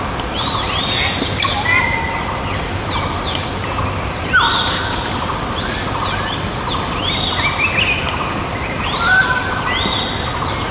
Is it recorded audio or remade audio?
recorded